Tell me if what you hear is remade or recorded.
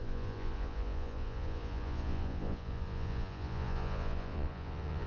remade